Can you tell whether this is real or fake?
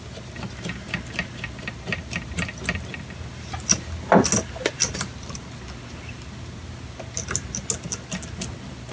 real